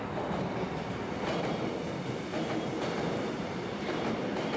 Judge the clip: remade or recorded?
recorded